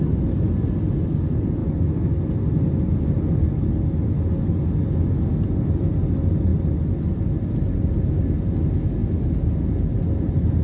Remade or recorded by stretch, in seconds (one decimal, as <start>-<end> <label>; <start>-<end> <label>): 0.0-10.6 recorded